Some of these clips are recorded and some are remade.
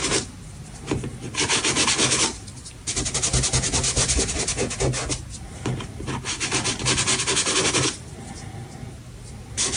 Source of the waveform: recorded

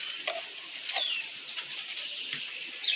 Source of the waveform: remade